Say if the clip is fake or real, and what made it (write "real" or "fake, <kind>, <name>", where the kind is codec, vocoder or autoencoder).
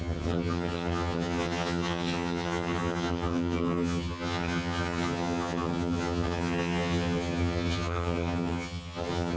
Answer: fake, vocoder, HiFi-GAN